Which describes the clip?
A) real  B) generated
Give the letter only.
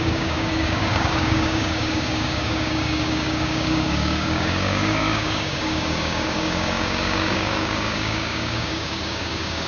B